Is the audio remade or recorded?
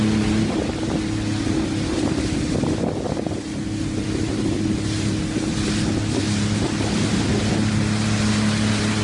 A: recorded